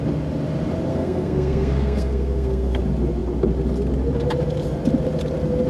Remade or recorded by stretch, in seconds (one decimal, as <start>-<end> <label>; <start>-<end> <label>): 0.0-0.9 recorded; 0.9-2.8 remade; 2.8-5.7 recorded

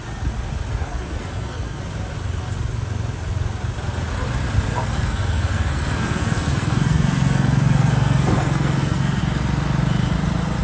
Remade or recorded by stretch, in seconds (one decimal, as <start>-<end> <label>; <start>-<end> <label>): 0.0-0.7 recorded; 0.7-1.8 remade; 1.8-4.7 recorded; 4.7-9.2 remade; 9.2-10.6 recorded

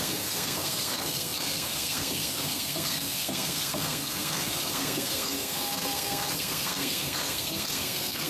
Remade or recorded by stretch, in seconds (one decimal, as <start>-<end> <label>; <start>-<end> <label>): 0.0-8.3 remade

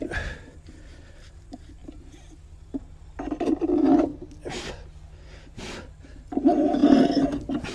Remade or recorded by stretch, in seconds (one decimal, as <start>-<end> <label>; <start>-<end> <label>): 0.0-7.7 recorded

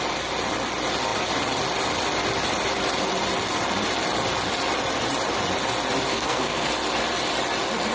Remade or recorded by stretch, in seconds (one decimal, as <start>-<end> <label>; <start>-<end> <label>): 0.0-6.1 recorded; 6.1-6.7 remade; 6.7-7.9 recorded

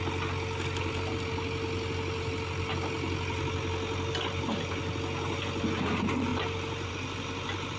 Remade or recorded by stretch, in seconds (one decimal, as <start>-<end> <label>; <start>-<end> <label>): 0.0-7.8 recorded

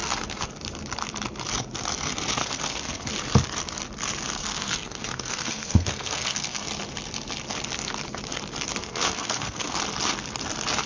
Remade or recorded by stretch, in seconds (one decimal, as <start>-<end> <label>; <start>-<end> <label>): 0.0-0.5 remade; 0.5-2.4 recorded; 2.4-3.1 remade; 3.1-4.4 recorded; 4.4-6.7 remade; 6.7-8.8 recorded; 8.8-9.8 remade; 9.8-10.9 recorded